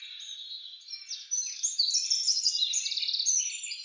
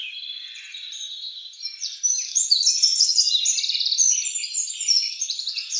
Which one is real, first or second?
first